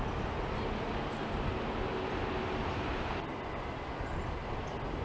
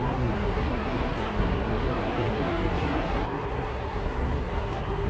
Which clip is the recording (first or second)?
first